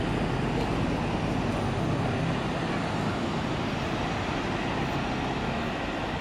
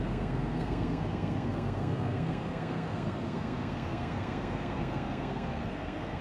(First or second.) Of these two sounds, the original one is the first